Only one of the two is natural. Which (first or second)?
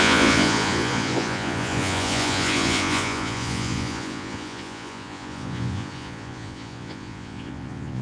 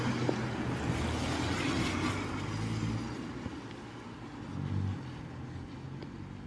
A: second